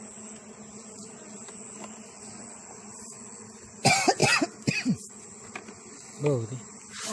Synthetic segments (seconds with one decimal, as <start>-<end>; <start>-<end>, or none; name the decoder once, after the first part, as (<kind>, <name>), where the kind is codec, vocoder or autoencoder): none